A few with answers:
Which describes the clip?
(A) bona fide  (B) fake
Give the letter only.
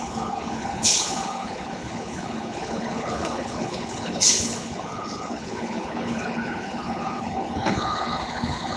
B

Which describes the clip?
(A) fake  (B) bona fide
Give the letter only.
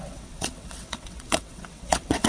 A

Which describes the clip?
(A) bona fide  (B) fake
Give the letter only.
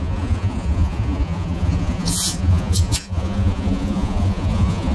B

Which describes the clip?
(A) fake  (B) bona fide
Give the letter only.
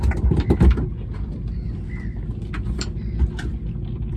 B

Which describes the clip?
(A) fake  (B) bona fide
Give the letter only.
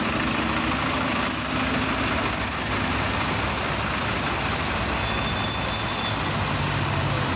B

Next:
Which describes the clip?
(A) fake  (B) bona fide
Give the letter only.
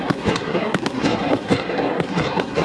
A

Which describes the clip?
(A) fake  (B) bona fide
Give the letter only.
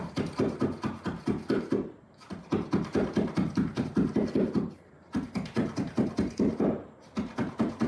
A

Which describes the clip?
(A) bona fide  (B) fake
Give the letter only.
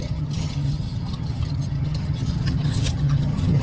B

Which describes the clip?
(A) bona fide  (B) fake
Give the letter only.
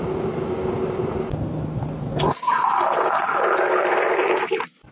A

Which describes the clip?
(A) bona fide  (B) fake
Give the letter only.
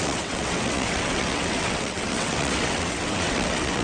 B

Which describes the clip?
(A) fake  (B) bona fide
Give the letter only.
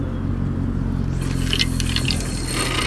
B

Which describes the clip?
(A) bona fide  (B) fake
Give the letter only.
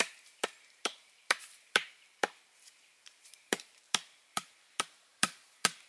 B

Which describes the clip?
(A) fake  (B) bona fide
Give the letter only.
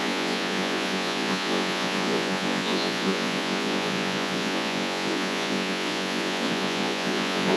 A